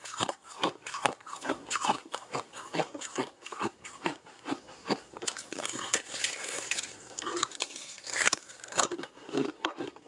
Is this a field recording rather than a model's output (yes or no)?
no